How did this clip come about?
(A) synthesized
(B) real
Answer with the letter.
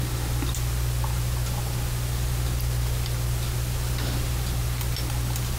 B